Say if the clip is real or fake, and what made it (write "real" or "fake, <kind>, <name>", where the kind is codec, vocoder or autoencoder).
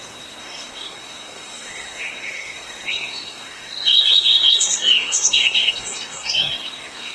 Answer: fake, codec, SNAC